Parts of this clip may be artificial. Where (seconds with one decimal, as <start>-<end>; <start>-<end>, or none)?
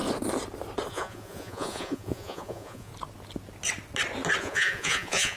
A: 0.9-2.9; 4.4-5.4